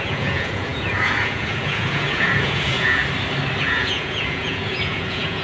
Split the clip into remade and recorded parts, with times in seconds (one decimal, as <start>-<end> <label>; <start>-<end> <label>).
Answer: 0.0-3.0 remade; 3.0-3.6 recorded; 3.6-5.4 remade